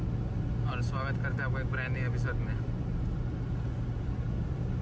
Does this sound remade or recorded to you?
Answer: recorded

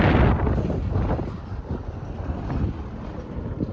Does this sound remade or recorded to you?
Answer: recorded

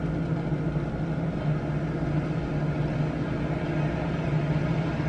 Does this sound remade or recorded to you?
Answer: recorded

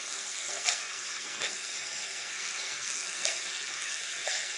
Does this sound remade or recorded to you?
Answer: remade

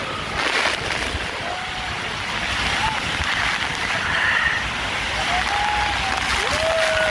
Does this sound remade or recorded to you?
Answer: recorded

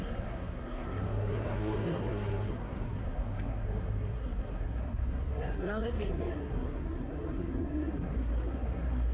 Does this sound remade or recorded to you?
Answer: remade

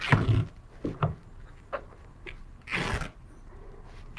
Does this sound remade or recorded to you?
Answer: recorded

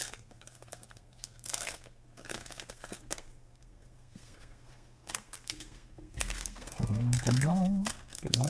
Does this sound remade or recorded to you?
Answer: remade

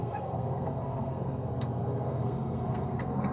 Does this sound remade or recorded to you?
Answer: remade